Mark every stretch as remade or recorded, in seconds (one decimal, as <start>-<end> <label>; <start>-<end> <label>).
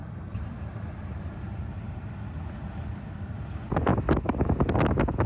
0.0-2.1 remade; 2.1-3.9 recorded; 3.9-4.6 remade; 4.6-5.3 recorded